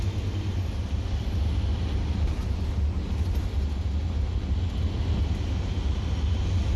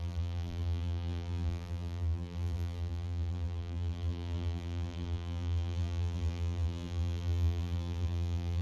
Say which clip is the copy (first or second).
second